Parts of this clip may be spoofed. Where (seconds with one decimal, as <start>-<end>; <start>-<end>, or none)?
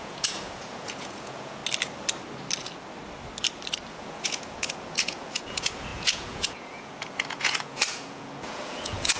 0.0-1.6; 3.9-9.2